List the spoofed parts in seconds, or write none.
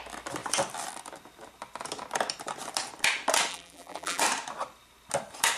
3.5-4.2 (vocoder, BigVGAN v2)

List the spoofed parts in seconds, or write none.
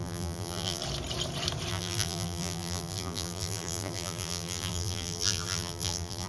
0.0-0.8 (vocoder, BigVGAN v2); 1.7-6.3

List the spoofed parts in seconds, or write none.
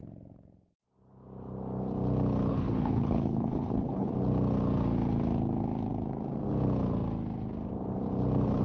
2.5-4.1 (codec, HILCodec)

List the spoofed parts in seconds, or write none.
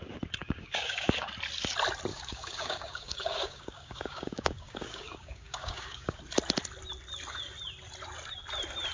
0.4-1.3 (codec, DAC); 2.1-6.2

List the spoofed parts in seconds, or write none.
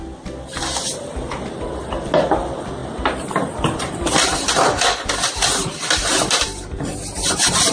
none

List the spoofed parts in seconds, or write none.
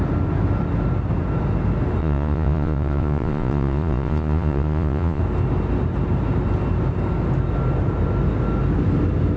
2.0-5.2 (vocoder, Vocos)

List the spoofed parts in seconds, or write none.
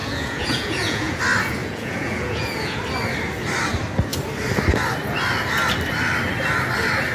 0.0-1.2 (vocoder, Vocos); 1.6-2.8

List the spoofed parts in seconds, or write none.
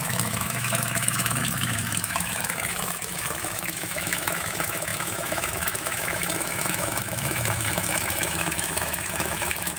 0.0-9.8 (autoencoder, DAC-VAE)